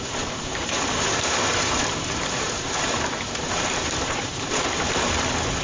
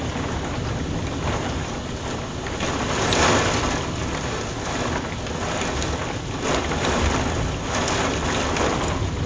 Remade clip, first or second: first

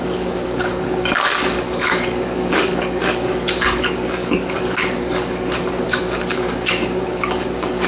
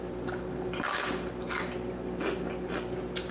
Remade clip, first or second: first